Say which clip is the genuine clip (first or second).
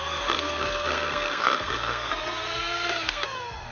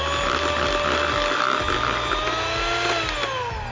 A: second